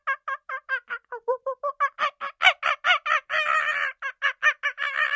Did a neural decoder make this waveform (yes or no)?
no